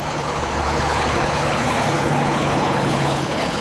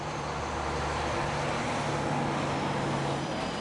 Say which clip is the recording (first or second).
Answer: second